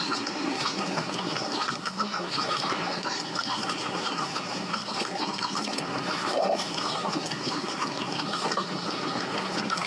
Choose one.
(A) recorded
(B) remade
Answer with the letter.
B